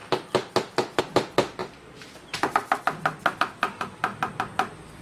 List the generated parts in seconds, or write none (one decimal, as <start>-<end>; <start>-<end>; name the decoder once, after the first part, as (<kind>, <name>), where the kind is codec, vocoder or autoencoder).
0.0-1.0 (vocoder, BigVGAN v2); 1.6-2.8